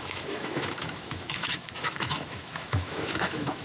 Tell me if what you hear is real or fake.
fake